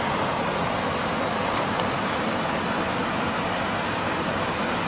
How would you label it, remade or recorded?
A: recorded